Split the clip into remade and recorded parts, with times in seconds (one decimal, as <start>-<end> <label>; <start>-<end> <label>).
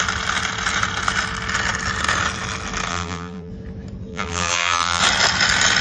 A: 0.0-2.9 recorded; 2.9-3.5 remade; 3.5-4.1 recorded; 4.1-5.0 remade; 5.0-5.8 recorded